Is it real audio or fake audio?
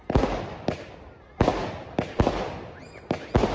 real